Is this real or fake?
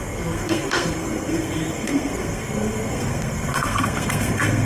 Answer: fake